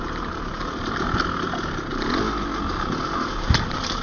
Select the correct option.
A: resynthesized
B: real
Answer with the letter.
B